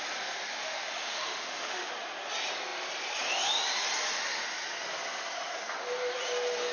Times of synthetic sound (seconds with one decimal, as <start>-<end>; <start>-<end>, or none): 0.5-1.9